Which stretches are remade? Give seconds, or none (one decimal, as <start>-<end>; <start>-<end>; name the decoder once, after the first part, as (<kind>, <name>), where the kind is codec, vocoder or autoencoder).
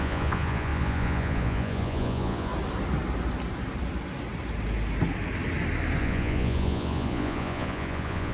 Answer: 0.0-2.5 (vocoder, Vocos); 6.0-8.3